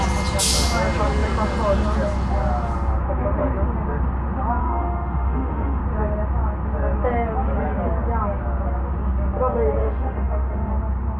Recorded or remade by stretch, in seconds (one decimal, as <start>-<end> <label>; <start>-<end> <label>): 0.0-4.6 recorded; 4.6-5.8 remade; 5.8-9.8 recorded; 9.8-10.7 remade; 10.7-11.2 recorded